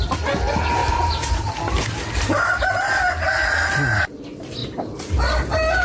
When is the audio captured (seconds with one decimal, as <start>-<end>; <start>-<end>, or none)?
0.0-0.8; 2.7-5.8